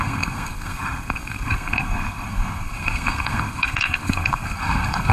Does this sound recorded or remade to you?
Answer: remade